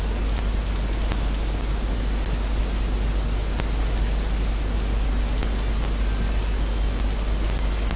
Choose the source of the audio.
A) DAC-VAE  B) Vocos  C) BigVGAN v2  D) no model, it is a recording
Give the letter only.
D